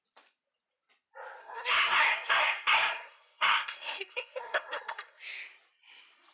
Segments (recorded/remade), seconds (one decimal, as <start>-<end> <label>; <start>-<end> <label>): 0.0-1.4 recorded; 1.4-5.2 remade; 5.2-6.3 recorded